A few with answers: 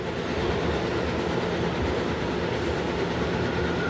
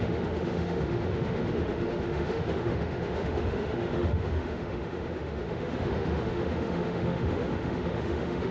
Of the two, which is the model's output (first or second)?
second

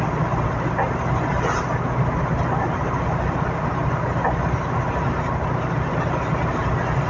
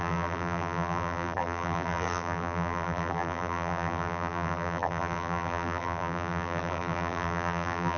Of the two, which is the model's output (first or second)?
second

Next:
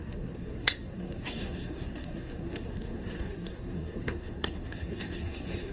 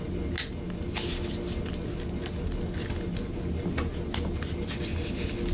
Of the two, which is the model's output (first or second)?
first